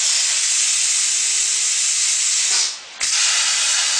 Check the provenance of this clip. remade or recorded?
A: recorded